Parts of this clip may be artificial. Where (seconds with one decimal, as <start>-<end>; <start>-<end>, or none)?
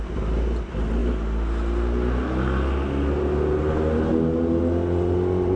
none